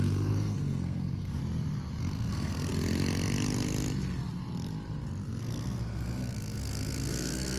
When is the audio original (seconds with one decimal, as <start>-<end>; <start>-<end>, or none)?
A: 1.4-2.0; 2.7-5.4